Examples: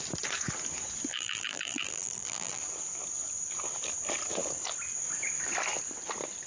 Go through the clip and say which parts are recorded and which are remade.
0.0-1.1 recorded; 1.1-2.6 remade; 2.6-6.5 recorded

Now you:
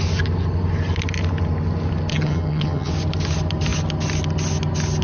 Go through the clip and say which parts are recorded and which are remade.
0.0-2.1 recorded; 2.1-2.9 remade; 2.9-5.0 recorded

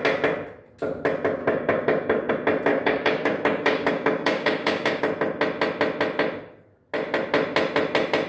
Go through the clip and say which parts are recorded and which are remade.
0.0-1.4 recorded; 1.4-2.3 remade; 2.3-2.7 recorded; 2.7-5.0 remade; 5.0-8.3 recorded